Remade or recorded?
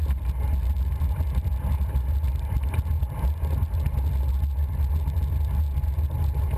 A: recorded